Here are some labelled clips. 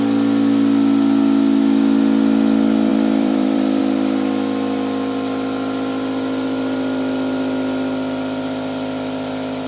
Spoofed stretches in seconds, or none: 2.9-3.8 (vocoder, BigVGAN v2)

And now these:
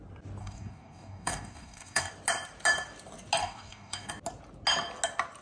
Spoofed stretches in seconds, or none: 0.4-2.1 (codec, DAC); 3.4-4.1

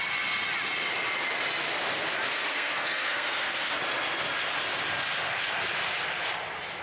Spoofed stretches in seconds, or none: 2.5-3.8 (codec, SNAC)

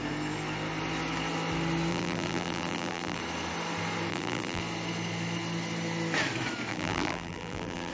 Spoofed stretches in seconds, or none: 1.9-3.2 (vocoder, BigVGAN v2); 4.1-4.6; 6.7-7.9

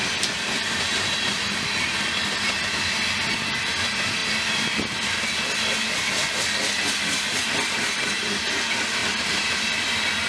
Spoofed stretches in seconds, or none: none

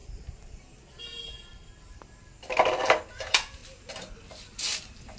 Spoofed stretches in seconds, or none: 1.0-1.5 (vocoder, Vocos); 3.1-3.6

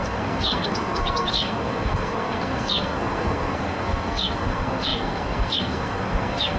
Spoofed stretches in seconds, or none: 0.0-6.6 (codec, SNAC)

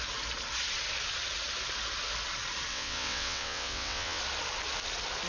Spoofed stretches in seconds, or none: 2.7-4.2 (vocoder, WaveNeXt)